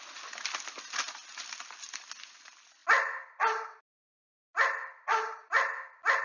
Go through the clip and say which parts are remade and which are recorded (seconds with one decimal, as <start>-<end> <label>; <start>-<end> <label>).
0.0-6.2 recorded